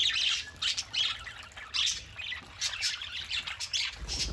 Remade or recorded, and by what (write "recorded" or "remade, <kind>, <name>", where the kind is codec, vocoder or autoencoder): recorded